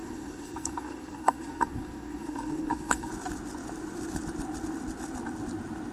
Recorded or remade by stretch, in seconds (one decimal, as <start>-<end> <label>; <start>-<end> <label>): 0.0-3.1 remade; 3.1-5.9 recorded